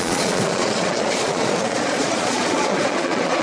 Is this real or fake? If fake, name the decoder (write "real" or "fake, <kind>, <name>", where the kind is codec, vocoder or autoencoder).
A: fake, vocoder, Vocos